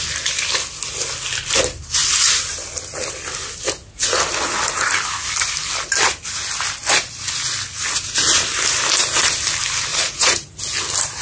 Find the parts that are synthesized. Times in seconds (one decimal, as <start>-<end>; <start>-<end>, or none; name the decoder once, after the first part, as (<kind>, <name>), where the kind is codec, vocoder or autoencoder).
9.9-10.6 (vocoder, Vocos)